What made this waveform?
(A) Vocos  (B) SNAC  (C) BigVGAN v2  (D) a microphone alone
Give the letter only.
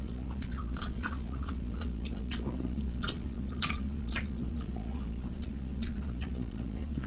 A